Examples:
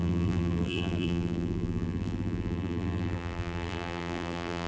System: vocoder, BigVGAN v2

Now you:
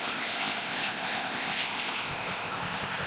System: codec, ZipCodec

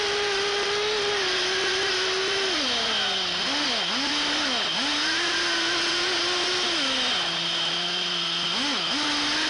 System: none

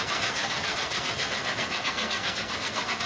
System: codec, SNAC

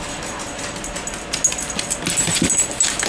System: none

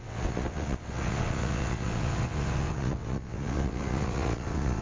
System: vocoder, WaveNeXt